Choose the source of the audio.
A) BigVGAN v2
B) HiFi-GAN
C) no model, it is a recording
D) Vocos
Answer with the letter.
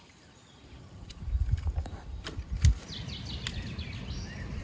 C